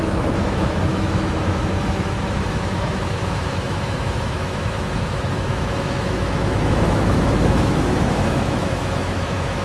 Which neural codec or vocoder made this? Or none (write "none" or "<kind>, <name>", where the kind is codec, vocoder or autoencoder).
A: autoencoder, DAC-VAE